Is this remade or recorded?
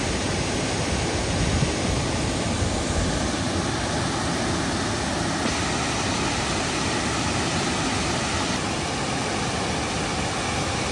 recorded